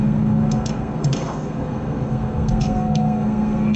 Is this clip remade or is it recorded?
remade